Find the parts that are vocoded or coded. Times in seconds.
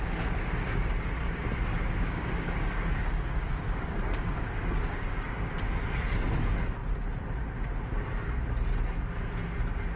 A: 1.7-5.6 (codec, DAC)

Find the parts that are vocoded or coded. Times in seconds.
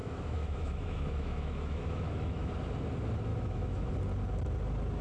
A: 0.0-2.5 (autoencoder, DAC-VAE); 3.3-3.9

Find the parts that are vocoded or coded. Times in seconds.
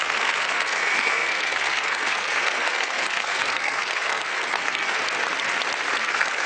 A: 0.0-5.0 (codec, SNAC); 6.0-6.5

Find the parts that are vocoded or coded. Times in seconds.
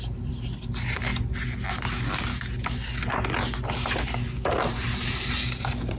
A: 0.0-1.1 (vocoder, BigVGAN v2); 4.7-6.0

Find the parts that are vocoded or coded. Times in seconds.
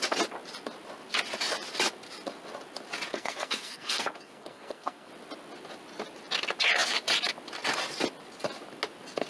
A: 3.1-5.1 (codec, SNAC)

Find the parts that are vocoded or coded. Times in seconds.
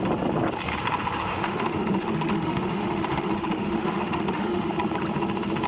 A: 1.3-4.7 (autoencoder, DAC-VAE)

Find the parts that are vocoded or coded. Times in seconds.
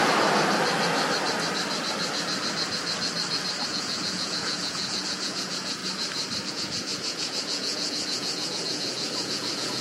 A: 3.7-5.8 (vocoder, Vocos); 6.5-9.8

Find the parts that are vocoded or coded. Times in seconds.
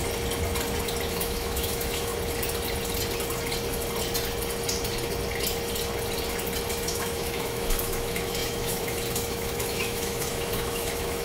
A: 1.1-2.1 (autoencoder, DAC-VAE); 6.7-11.2